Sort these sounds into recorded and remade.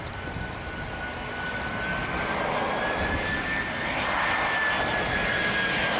recorded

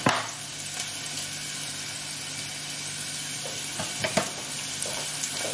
recorded